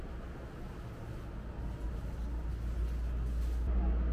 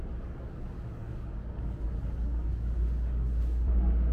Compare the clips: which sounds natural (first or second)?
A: first